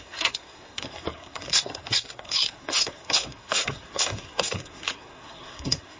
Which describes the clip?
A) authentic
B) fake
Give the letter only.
B